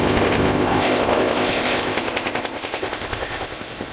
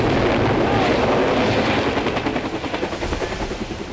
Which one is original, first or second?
second